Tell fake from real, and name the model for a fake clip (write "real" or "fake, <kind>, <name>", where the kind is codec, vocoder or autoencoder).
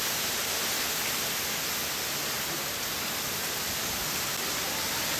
real